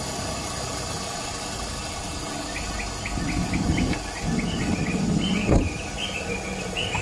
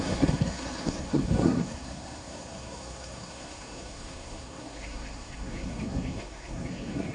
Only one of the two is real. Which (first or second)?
first